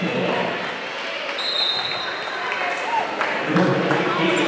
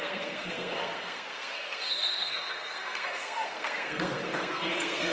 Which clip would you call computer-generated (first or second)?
second